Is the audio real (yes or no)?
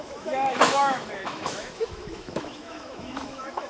no